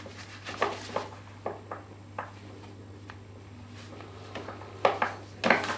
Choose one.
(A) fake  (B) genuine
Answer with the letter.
B